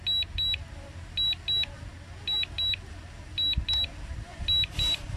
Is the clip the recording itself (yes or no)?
yes